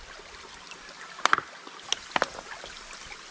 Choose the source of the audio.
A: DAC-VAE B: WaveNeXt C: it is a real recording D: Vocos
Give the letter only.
C